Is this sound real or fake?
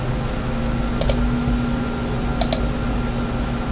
real